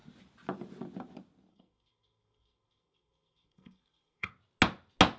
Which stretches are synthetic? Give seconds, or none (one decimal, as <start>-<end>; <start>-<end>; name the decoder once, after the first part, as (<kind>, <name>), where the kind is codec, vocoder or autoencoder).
1.5-4.3 (codec, SNAC)